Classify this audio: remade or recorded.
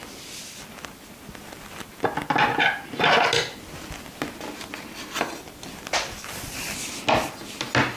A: recorded